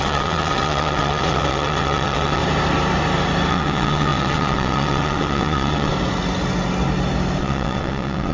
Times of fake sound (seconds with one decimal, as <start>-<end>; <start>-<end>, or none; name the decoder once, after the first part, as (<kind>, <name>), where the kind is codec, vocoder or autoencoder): 0.0-2.4 (vocoder, WaveNeXt); 3.5-5.9; 7.4-8.3